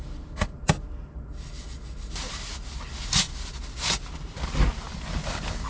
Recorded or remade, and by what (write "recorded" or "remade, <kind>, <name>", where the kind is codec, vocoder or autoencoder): recorded